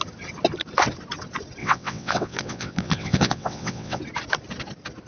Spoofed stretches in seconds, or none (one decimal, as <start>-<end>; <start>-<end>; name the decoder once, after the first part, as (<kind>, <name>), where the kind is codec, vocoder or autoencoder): 1.6-4.0 (vocoder, WaveNeXt)